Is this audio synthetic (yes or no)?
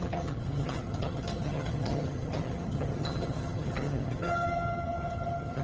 yes